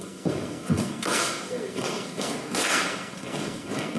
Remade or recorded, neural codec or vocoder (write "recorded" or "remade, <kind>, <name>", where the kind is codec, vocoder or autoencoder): remade, codec, SNAC